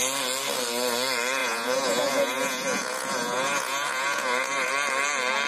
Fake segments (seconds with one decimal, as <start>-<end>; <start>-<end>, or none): 1.4-4.7